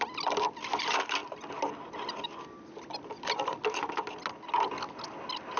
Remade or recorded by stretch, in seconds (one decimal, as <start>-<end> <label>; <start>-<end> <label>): 0.0-5.6 recorded